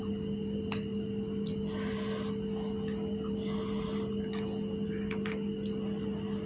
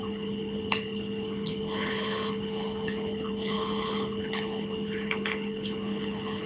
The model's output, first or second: second